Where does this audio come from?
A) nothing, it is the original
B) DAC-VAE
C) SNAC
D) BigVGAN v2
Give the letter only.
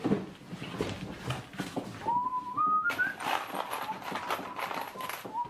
A